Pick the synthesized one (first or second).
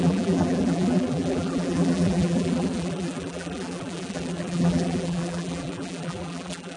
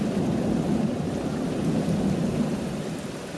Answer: first